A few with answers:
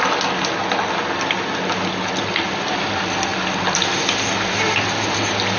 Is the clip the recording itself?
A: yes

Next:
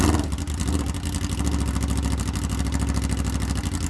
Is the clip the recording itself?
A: yes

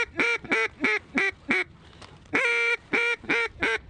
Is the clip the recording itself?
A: yes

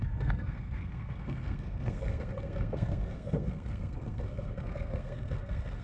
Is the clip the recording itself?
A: no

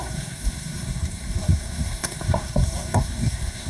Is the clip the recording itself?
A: no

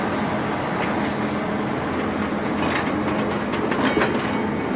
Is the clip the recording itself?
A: yes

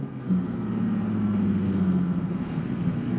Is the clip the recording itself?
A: no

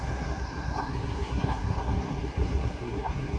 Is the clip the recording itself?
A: no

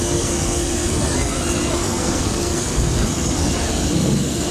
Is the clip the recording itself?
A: no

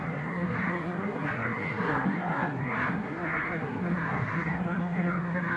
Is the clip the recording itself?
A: no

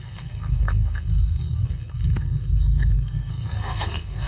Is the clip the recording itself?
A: no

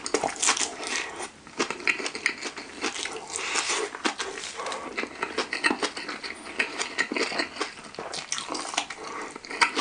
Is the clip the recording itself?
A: yes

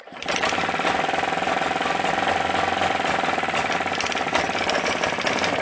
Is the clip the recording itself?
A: yes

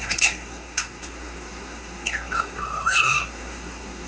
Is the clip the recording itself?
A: no